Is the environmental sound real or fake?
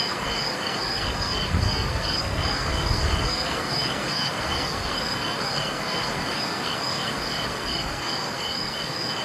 fake